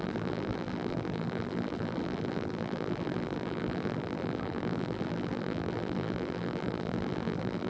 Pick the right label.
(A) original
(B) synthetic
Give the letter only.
B